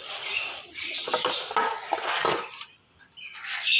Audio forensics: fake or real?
real